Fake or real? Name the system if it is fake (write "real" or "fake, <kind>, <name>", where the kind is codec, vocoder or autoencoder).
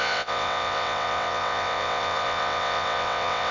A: fake, vocoder, WaveNeXt